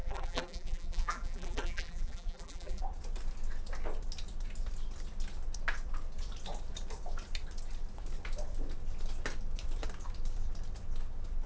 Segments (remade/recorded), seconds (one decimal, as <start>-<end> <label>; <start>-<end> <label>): 0.0-2.8 remade; 2.8-11.5 recorded